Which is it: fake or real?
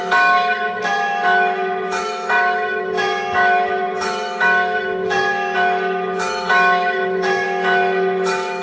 fake